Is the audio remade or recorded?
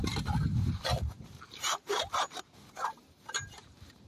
remade